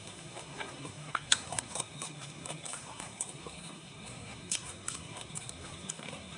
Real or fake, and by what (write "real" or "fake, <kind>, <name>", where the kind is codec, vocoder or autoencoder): fake, codec, SNAC